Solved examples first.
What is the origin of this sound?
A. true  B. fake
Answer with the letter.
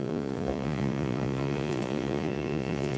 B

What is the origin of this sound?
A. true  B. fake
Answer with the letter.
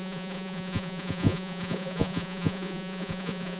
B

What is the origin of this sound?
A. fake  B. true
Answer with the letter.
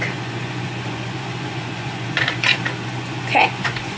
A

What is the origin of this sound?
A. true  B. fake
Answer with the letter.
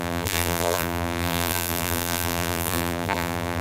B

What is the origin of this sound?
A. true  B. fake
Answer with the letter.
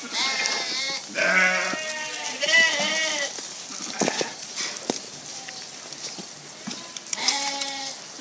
A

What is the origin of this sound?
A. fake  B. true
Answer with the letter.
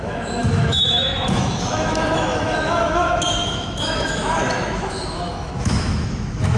A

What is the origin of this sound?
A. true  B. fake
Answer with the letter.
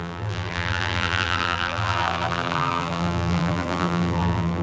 B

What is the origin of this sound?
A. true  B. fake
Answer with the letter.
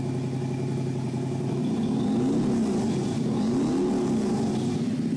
A